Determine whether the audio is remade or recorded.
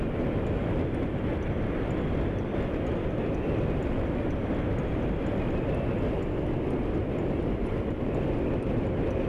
recorded